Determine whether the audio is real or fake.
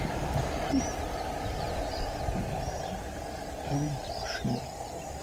real